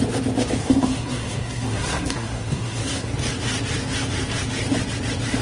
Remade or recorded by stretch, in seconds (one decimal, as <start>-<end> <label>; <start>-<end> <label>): 0.0-0.6 recorded; 0.6-3.1 remade; 3.1-5.4 recorded